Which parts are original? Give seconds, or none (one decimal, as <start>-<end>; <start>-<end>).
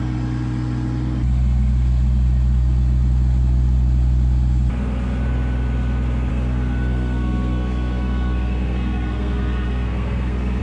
0.0-6.3